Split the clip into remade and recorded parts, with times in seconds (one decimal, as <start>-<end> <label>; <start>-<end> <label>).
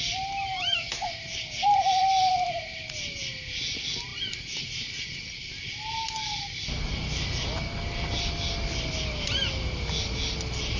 0.0-0.5 recorded; 0.5-1.0 remade; 1.0-10.8 recorded